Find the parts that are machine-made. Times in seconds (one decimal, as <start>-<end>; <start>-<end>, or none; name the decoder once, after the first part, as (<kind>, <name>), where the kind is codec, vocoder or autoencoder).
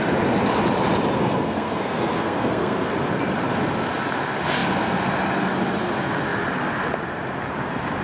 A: 1.2-2.9 (codec, SNAC)